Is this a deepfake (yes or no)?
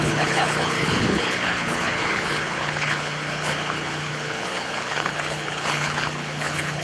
yes